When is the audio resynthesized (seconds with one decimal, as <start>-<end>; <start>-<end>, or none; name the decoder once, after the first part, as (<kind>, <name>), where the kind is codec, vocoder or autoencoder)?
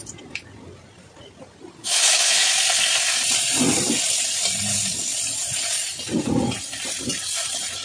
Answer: 1.8-2.5 (autoencoder, DAC-VAE)